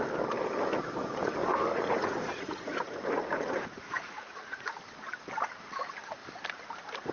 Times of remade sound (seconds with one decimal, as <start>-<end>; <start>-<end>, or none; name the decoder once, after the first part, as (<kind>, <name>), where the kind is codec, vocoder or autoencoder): 1.4-4.7 (vocoder, Vocos)